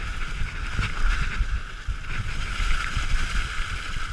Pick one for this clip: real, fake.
real